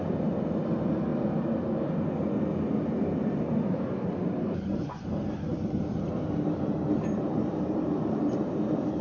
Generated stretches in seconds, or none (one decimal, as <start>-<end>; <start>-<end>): 0.0-1.1; 3.4-9.0